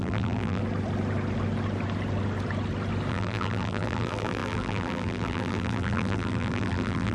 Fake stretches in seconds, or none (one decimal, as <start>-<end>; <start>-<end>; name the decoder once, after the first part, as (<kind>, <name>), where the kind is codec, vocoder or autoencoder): 0.0-0.6 (vocoder, BigVGAN v2); 3.1-7.1